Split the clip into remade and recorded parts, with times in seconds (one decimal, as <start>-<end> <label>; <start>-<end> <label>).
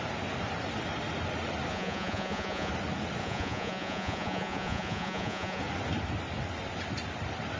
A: 0.0-1.7 recorded; 1.7-2.7 remade; 2.7-3.2 recorded; 3.2-5.6 remade; 5.6-7.6 recorded